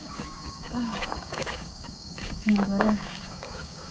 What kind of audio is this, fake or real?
fake